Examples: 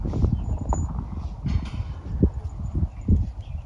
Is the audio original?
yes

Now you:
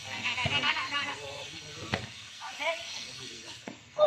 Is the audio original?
no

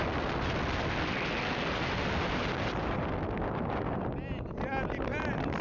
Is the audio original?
yes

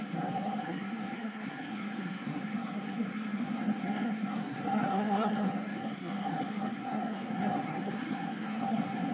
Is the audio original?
no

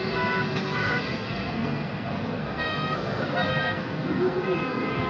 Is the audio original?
no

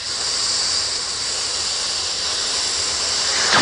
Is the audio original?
yes